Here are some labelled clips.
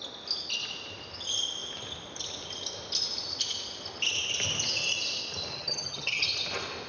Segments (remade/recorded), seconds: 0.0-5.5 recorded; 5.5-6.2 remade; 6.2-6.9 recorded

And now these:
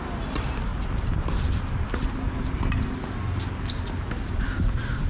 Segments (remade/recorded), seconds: 0.0-5.1 recorded

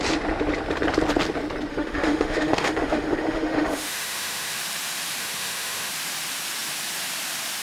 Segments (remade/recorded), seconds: 0.0-1.7 recorded; 1.7-4.6 remade; 4.6-5.2 recorded; 5.2-5.9 remade; 5.9-7.6 recorded

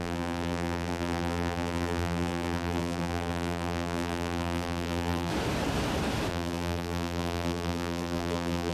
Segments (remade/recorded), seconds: 0.0-5.3 remade; 5.3-6.3 recorded; 6.3-8.7 remade

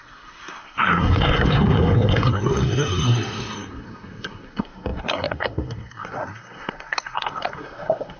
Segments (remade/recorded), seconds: 0.0-8.2 remade

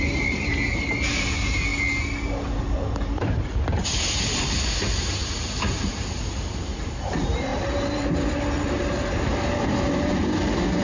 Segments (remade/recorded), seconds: 0.0-1.7 remade; 1.7-2.6 recorded; 2.6-10.8 remade